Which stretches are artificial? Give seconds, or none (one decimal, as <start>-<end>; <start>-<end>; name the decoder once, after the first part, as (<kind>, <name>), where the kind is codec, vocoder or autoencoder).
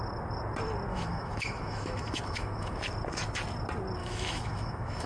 0.9-2.8 (autoencoder, DAC-VAE); 4.0-5.1